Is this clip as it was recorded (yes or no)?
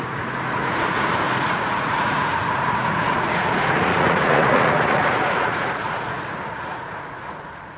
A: no